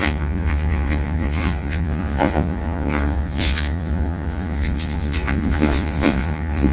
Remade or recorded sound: remade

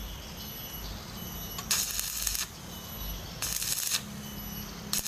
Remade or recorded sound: recorded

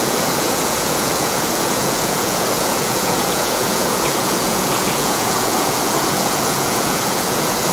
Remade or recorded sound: remade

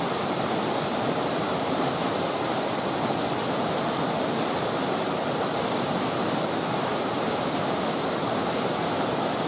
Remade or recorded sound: recorded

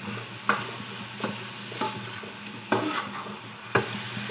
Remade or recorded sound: recorded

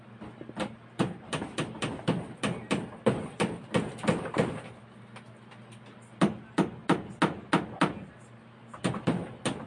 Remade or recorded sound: recorded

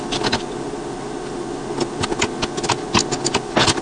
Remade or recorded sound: recorded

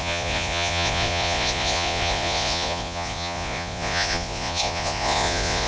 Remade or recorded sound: remade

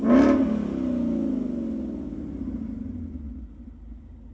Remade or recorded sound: recorded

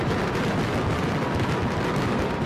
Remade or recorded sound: recorded